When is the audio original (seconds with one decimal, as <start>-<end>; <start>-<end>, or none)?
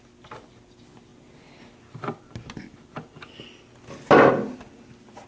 0.0-5.3